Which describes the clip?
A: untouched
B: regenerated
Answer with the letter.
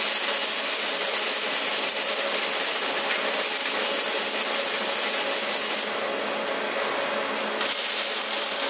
A